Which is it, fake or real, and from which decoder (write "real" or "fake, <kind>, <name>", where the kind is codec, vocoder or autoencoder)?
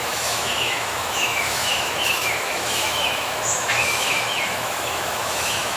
fake, autoencoder, DAC-VAE